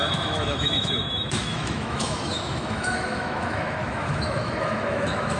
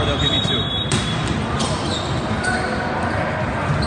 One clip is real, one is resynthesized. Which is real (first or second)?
second